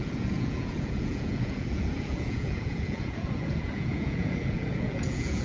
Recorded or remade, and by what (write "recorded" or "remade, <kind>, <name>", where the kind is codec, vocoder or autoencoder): remade, vocoder, Vocos